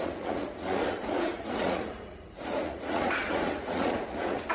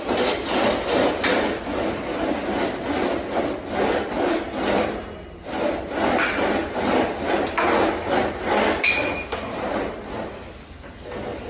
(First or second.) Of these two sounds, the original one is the second